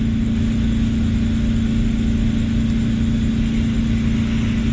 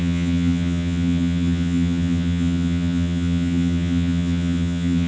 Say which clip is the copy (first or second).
second